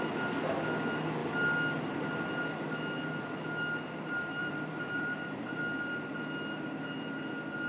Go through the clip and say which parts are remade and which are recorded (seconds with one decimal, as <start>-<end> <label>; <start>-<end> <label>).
0.0-4.4 recorded; 4.4-5.6 remade; 5.6-7.7 recorded